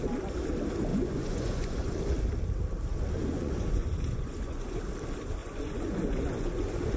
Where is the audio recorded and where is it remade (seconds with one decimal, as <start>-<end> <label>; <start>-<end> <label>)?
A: 0.0-0.9 recorded; 0.9-2.0 remade; 2.0-3.2 recorded; 3.2-4.8 remade; 4.8-5.4 recorded; 5.4-7.0 remade